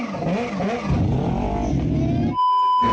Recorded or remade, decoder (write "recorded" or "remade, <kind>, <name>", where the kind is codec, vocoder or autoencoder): recorded